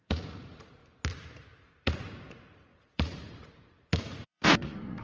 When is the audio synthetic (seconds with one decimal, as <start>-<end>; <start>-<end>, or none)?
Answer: 0.0-0.8; 1.8-5.0